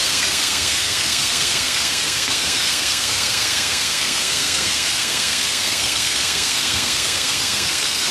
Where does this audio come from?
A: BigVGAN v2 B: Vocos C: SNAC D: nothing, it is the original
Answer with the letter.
C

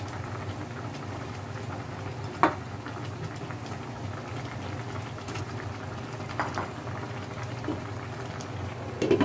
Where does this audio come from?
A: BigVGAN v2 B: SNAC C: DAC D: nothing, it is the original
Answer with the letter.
D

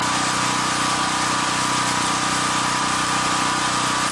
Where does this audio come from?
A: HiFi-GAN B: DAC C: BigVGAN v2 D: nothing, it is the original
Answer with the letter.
D